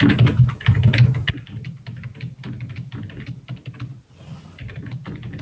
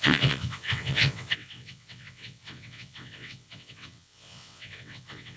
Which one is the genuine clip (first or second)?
first